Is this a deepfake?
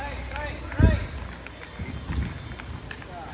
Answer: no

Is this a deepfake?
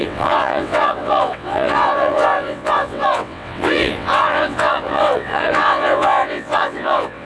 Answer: yes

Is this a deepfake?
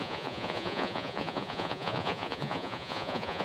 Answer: yes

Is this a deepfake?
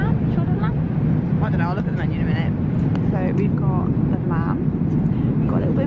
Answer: no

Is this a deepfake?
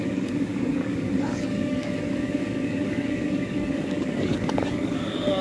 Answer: yes